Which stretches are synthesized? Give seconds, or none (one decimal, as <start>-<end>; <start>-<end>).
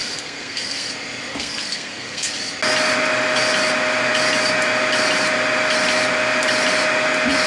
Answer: 0.0-0.9; 1.3-2.3